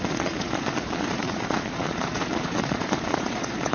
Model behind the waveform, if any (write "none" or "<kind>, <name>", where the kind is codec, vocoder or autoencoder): vocoder, Vocos